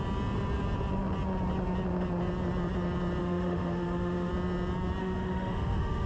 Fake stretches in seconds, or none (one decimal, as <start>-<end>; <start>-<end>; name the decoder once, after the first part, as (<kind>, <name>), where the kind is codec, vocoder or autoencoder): 3.2-4.3 (autoencoder, DAC-VAE); 5.0-6.1

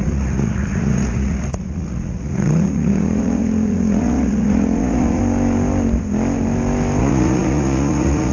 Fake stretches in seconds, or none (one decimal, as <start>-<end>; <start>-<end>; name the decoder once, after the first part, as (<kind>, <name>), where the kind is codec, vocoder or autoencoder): 0.0-5.2 (vocoder, Vocos); 7.0-8.3

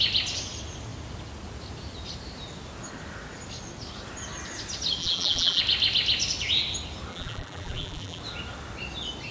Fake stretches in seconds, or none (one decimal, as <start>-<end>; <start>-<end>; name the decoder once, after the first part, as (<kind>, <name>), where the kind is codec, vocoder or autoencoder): 5.0-5.6 (vocoder, BigVGAN v2); 7.1-8.2

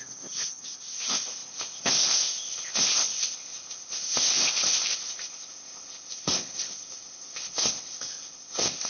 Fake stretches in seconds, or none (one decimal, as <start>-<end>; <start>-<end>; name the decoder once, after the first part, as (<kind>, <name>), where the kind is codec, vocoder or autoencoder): 0.0-8.9 (codec, ZipCodec)

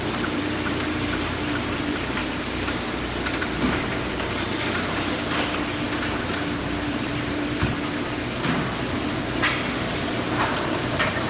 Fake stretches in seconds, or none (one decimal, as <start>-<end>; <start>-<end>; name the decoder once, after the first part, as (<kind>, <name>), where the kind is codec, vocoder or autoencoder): 0.0-2.2 (vocoder, BigVGAN v2); 6.9-8.2; 9.7-11.3

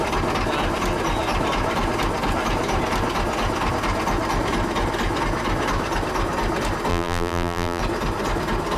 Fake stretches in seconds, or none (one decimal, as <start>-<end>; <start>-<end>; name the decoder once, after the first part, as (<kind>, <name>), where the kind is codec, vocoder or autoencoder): 6.9-7.8 (vocoder, BigVGAN v2)

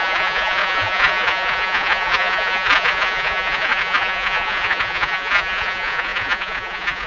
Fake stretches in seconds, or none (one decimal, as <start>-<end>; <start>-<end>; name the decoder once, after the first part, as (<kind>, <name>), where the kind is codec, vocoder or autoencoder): 0.0-7.1 (vocoder, Vocos)

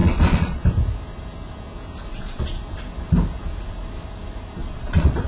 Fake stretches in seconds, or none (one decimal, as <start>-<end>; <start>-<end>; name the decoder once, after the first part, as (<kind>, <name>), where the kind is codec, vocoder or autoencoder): 0.0-0.6 (vocoder, Vocos); 2.1-2.6; 4.6-5.3